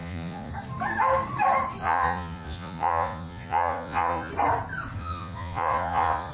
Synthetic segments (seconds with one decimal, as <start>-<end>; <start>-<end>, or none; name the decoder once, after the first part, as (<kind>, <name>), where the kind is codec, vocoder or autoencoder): 0.0-0.5 (vocoder, Vocos); 1.8-4.3; 5.0-6.3